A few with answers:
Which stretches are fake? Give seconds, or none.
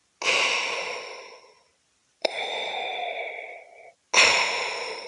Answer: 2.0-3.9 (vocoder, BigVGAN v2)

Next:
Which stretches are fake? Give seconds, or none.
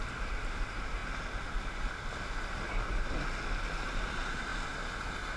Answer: 0.0-1.0 (vocoder, BigVGAN v2); 3.9-4.5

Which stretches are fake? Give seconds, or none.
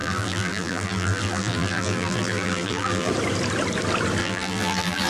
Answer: 0.0-3.1 (vocoder, BigVGAN v2); 4.2-5.1